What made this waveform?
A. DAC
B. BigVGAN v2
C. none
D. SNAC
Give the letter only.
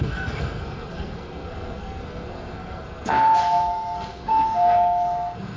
D